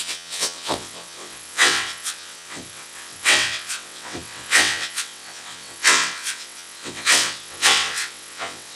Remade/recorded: remade